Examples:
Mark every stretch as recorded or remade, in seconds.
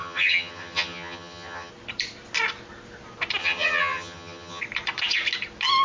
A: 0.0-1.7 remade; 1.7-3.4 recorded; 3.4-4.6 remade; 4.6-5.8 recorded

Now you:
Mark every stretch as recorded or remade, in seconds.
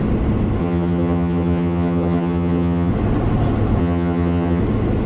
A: 0.0-0.6 recorded; 0.6-2.9 remade; 2.9-3.8 recorded; 3.8-4.6 remade; 4.6-5.1 recorded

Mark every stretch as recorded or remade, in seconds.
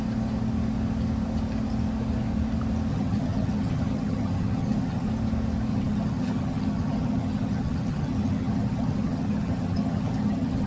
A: 0.0-2.9 recorded; 2.9-5.1 remade; 5.1-5.7 recorded; 5.7-10.7 remade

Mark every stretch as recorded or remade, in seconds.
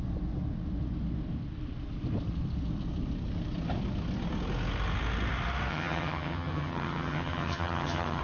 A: 0.0-5.7 recorded; 5.7-8.2 remade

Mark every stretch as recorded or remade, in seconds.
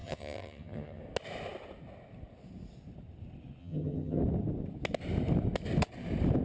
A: 0.0-1.0 remade; 1.0-3.6 recorded; 3.6-4.2 remade; 4.2-6.4 recorded